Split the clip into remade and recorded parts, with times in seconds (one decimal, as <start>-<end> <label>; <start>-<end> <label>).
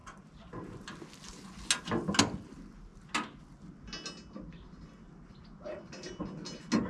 0.0-6.9 recorded